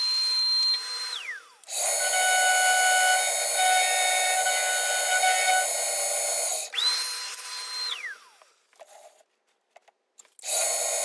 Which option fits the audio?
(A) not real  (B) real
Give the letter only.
B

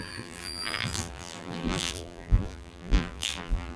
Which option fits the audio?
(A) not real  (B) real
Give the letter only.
A